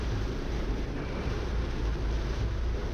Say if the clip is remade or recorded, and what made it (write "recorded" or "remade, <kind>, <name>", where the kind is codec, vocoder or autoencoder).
remade, vocoder, BigVGAN v2